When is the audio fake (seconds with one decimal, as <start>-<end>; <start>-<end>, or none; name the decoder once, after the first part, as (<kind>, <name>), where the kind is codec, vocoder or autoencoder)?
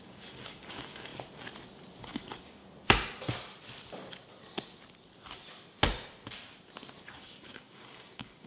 0.0-1.1 (codec, DAC); 2.0-2.6; 7.0-8.5